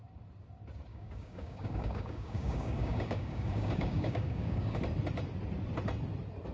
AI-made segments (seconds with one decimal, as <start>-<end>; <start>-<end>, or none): 0.9-4.8